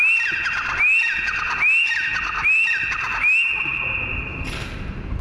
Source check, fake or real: real